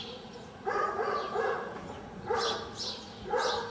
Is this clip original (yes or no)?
no